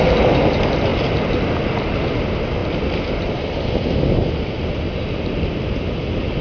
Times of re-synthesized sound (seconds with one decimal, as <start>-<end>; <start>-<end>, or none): none